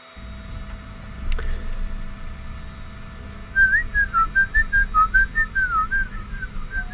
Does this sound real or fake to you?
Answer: real